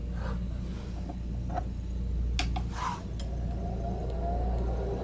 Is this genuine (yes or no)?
yes